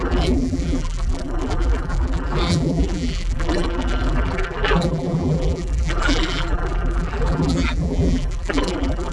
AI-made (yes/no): yes